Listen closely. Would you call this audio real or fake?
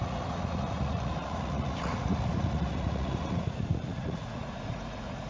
fake